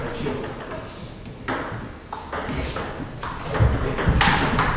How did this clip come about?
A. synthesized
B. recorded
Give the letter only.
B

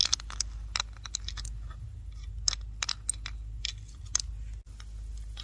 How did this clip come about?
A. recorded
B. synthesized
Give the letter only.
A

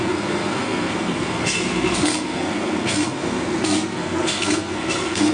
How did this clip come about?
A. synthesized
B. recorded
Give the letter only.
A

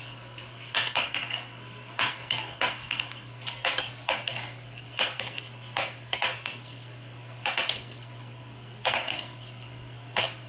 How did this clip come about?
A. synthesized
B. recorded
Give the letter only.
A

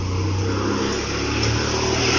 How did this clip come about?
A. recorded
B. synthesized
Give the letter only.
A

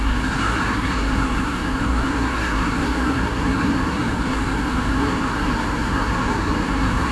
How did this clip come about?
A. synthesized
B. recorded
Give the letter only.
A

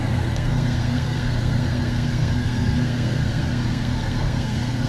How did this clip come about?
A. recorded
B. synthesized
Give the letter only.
B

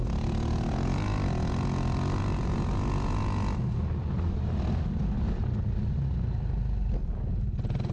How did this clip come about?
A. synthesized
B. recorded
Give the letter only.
B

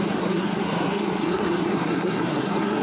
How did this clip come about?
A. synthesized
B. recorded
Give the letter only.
A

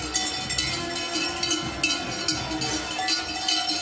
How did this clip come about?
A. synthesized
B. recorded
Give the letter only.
B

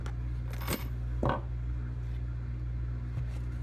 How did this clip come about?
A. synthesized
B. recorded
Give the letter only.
B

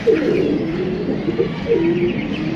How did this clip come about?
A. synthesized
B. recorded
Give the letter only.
B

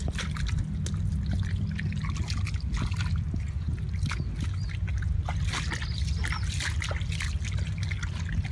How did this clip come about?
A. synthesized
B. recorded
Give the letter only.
B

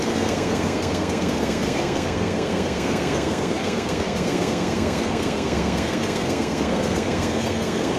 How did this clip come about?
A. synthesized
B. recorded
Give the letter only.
A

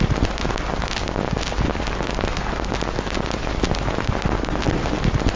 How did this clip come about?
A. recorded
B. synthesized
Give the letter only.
A